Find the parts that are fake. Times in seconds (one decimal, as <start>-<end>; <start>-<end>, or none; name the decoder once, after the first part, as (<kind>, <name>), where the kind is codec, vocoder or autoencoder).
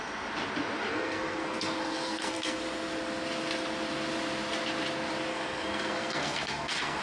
0.9-2.6 (codec, SNAC); 5.3-7.0